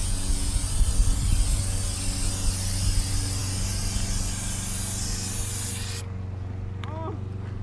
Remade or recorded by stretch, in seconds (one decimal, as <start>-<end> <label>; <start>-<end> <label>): 0.0-0.6 remade; 0.6-7.6 recorded